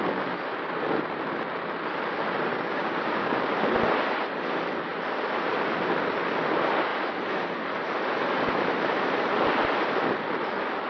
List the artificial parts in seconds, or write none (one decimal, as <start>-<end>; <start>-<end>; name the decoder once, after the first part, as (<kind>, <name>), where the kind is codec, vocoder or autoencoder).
2.5-3.4 (codec, DAC)